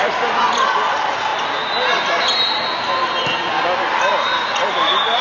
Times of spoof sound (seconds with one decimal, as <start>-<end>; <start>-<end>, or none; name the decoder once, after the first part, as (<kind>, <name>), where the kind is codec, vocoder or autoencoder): none